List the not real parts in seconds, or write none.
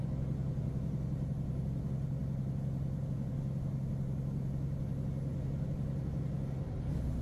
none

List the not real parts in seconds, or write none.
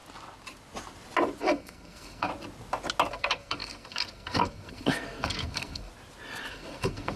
1.4-2.3 (codec, SNAC); 3.1-5.9; 6.5-7.2